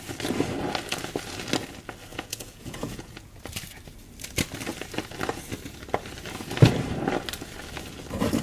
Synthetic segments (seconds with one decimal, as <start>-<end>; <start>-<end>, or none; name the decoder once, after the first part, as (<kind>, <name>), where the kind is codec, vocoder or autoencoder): 2.1-3.4 (vocoder, Vocos)